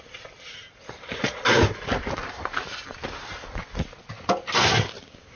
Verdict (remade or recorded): recorded